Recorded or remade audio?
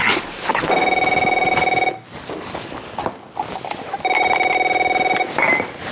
recorded